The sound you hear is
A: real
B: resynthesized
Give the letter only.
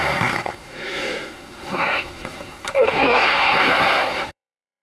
B